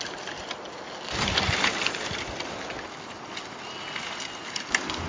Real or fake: real